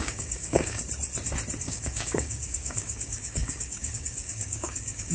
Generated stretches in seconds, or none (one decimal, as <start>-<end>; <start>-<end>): 0.0-0.8; 1.6-5.1